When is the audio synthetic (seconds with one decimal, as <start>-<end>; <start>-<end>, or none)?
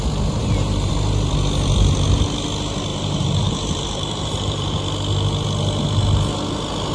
0.4-0.9; 2.9-4.8